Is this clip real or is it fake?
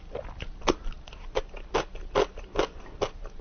real